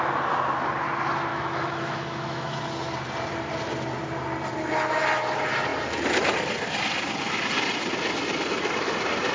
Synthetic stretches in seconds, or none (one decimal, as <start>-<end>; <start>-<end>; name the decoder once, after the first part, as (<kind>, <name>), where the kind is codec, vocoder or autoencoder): 1.3-2.6 (autoencoder, DAC-VAE)